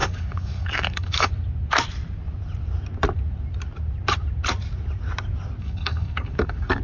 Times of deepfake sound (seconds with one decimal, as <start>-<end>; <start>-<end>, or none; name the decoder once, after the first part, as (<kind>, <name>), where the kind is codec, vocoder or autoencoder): 0.0-1.3 (codec, DAC); 5.6-6.8